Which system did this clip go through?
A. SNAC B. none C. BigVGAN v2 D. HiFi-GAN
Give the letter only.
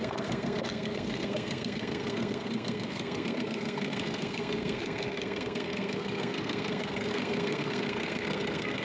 A